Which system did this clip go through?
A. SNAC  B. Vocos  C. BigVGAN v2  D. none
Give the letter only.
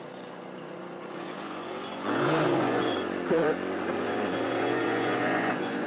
B